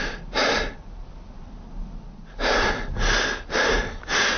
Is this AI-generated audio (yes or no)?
no